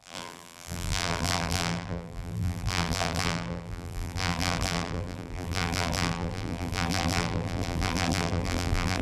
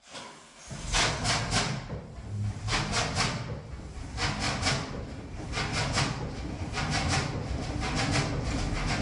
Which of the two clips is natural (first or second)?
second